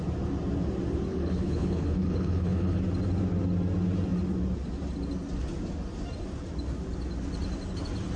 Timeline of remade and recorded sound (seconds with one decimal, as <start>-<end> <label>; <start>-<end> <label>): 0.0-1.1 recorded; 1.1-2.8 remade; 2.8-8.2 recorded